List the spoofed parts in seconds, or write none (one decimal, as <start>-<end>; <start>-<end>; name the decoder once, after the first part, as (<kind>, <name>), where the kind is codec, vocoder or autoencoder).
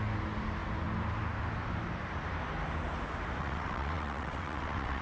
3.4-5.0 (vocoder, WaveNeXt)